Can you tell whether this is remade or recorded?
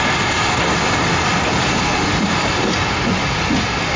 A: recorded